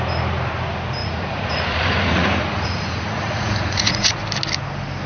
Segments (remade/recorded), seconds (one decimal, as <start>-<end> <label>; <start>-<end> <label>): 0.0-1.0 recorded; 1.0-4.1 remade; 4.1-5.1 recorded